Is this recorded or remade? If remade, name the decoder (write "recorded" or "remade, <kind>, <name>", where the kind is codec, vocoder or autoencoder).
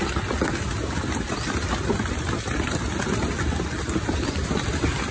recorded